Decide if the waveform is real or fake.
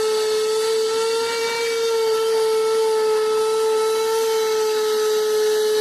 real